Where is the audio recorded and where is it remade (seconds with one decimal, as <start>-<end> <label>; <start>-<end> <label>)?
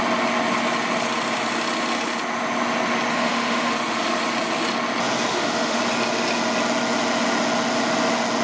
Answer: 0.0-3.1 recorded; 3.1-3.7 remade; 3.7-5.3 recorded; 5.3-5.8 remade; 5.8-8.4 recorded